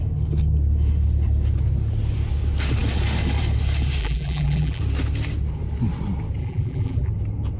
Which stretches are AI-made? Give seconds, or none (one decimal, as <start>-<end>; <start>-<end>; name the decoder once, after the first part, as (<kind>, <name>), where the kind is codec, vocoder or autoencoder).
4.0-4.8 (vocoder, BigVGAN v2); 6.4-7.1